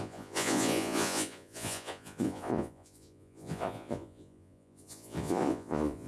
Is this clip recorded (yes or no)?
no